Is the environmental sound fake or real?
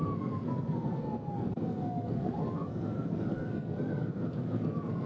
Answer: fake